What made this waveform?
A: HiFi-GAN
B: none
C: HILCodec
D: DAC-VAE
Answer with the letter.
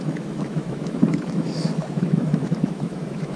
D